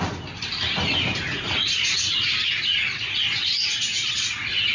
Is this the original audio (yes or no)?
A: yes